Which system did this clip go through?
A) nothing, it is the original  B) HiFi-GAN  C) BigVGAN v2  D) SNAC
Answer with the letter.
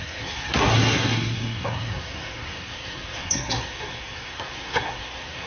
D